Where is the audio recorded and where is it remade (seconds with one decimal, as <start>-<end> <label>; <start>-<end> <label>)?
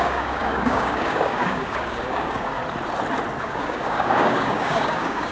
0.0-2.6 remade; 2.6-3.4 recorded; 3.4-5.3 remade